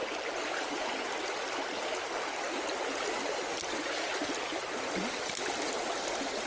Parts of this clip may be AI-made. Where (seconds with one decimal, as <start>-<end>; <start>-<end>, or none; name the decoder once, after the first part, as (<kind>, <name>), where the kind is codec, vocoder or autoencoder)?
none